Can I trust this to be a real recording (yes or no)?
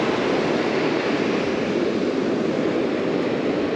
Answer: yes